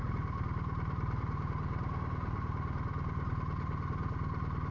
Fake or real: fake